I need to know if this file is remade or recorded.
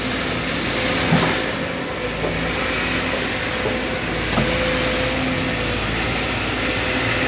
recorded